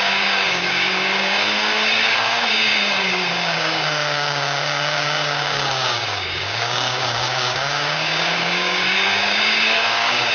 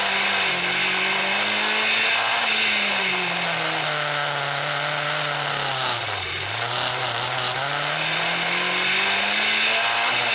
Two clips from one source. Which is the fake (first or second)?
first